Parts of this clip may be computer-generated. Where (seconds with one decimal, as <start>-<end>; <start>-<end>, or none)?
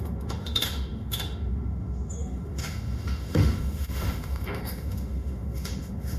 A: 0.0-6.2